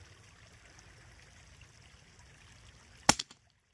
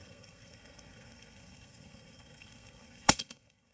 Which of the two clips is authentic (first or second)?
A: first